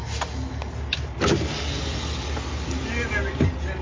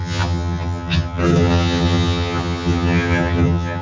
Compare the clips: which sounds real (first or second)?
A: first